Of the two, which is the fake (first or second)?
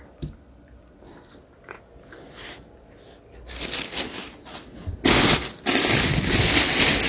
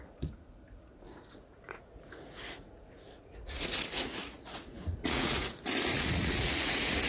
second